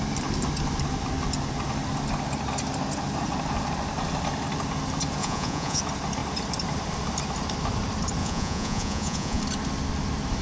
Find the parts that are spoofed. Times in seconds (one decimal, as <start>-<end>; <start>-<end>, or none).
5.2-5.8; 8.2-9.4